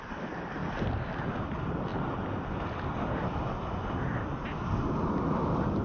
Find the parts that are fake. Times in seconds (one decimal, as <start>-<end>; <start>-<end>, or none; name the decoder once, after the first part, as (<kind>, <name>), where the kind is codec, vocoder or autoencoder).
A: none